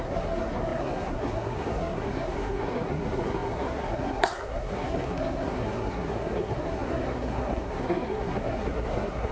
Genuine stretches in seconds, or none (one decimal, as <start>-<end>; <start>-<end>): none